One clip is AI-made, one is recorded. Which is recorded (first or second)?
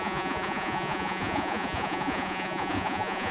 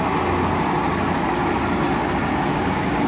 second